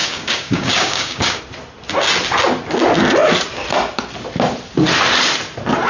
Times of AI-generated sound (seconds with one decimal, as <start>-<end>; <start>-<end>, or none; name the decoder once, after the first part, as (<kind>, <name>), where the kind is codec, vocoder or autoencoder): 0.0-1.4 (codec, DAC)